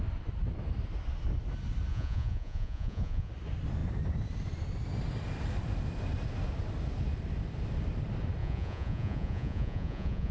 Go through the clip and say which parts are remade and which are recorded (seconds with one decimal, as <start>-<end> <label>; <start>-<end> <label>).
0.0-1.9 recorded; 1.9-3.3 remade; 3.3-8.4 recorded; 8.4-10.3 remade